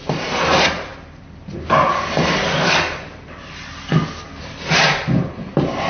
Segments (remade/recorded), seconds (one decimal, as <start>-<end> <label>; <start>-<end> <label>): 0.0-5.9 recorded